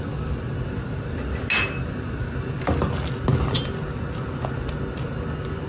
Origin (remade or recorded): recorded